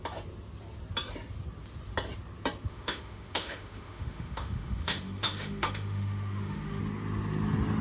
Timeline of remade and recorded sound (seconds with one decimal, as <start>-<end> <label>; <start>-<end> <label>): 0.0-2.7 recorded; 2.7-6.8 remade; 6.8-7.8 recorded